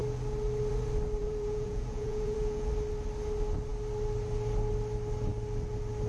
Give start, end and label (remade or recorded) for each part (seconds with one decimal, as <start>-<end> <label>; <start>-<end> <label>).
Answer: 0.0-1.2 recorded; 1.2-2.7 remade; 2.7-6.1 recorded